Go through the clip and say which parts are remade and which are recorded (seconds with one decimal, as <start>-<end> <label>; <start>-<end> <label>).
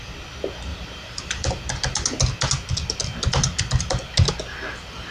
0.0-0.7 recorded; 0.7-1.6 remade; 1.6-5.1 recorded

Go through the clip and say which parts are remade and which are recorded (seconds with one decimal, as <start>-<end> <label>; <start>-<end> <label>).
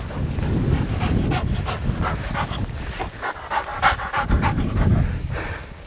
0.0-3.7 recorded; 3.7-4.9 remade; 4.9-5.9 recorded